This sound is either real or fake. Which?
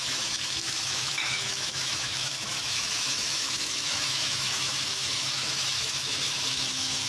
fake